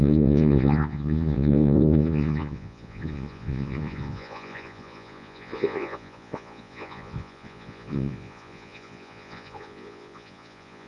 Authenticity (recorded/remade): remade